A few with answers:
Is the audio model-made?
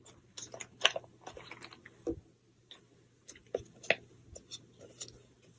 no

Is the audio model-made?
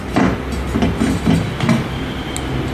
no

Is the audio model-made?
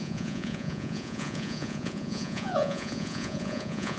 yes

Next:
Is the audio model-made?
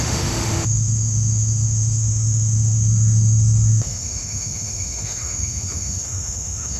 yes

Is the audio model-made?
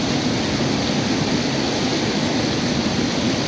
no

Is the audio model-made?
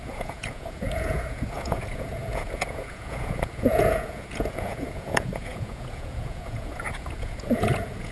yes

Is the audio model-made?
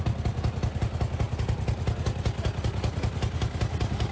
no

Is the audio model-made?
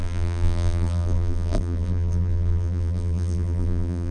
yes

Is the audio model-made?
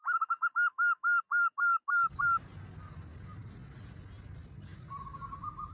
no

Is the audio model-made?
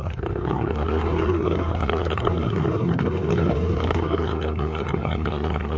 yes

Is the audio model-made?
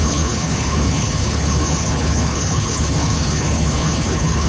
yes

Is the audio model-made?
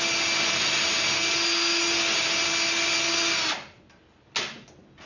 no